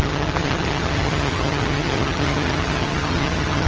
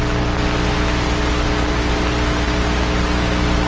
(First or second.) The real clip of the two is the second